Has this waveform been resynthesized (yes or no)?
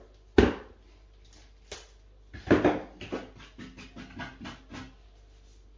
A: no